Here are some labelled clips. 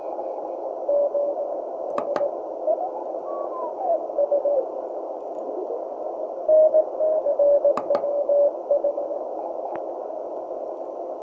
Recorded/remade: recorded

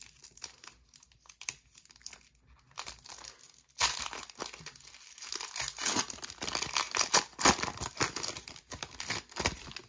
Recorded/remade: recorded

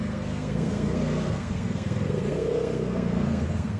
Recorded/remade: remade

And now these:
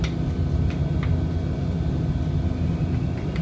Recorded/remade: recorded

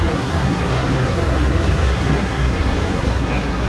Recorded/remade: remade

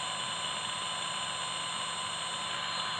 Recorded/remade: recorded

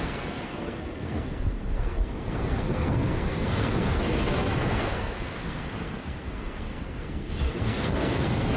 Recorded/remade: remade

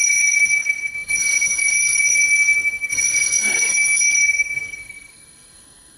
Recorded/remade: remade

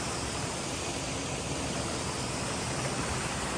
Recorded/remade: recorded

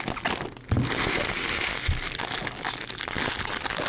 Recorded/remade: recorded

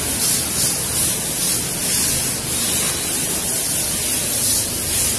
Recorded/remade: recorded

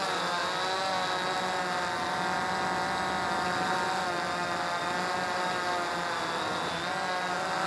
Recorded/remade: recorded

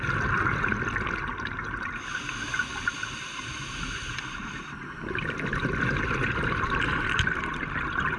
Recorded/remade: recorded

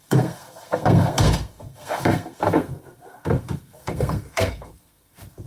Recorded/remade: remade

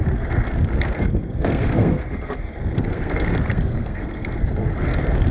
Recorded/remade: remade